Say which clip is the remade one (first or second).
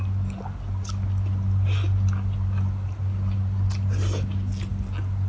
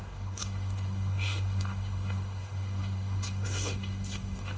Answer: second